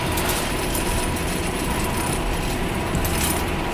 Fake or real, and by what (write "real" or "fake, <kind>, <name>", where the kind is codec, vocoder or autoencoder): real